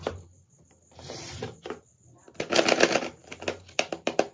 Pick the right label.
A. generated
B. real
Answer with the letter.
A